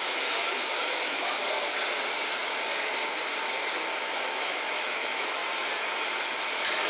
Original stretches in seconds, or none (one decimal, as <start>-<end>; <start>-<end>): 1.4-4.0; 5.4-6.9